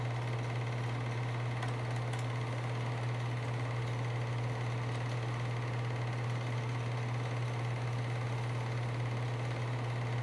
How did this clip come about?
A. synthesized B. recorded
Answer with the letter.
B